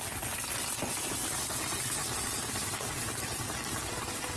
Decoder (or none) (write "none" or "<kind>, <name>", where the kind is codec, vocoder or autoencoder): none